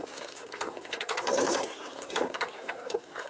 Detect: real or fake fake